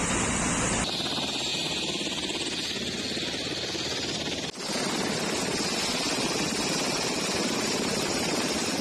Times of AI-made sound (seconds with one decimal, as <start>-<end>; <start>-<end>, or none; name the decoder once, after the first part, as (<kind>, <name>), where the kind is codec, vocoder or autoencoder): none